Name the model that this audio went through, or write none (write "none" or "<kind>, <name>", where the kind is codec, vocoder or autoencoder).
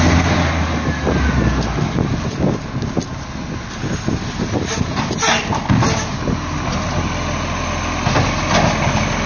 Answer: none